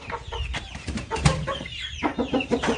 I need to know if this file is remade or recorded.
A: remade